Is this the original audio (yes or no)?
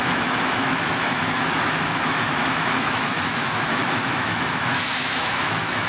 no